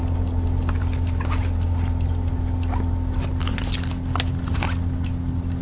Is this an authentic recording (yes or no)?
yes